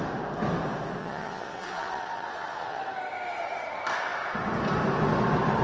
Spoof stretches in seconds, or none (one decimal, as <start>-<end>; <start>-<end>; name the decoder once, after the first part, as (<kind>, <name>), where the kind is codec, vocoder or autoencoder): 1.0-2.8 (vocoder, Vocos)